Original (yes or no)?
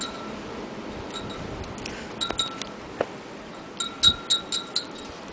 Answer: yes